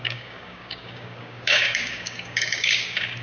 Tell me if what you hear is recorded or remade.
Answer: remade